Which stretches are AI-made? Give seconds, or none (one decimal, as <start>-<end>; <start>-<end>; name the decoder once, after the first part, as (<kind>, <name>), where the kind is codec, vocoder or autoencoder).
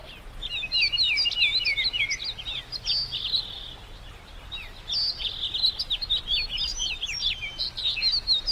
6.7-7.3 (vocoder, BigVGAN v2)